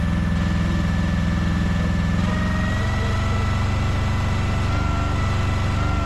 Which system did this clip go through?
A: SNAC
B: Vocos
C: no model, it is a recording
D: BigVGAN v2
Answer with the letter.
C